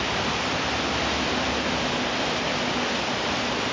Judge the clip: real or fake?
real